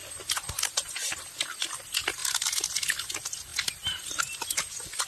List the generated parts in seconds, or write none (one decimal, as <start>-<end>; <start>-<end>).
none